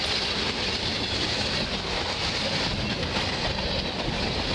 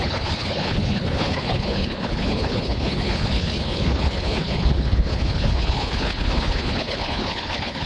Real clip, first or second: first